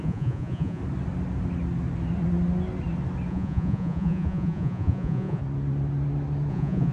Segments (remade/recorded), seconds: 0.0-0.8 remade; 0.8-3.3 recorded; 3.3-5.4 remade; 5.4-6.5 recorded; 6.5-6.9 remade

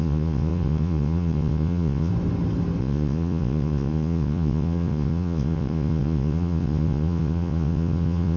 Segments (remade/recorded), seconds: 0.0-2.1 remade; 2.1-2.8 recorded; 2.8-8.4 remade